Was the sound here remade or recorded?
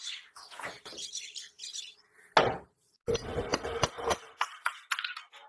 recorded